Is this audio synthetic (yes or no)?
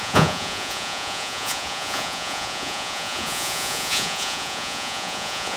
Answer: yes